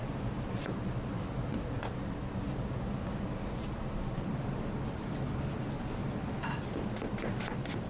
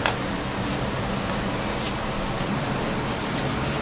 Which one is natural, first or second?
second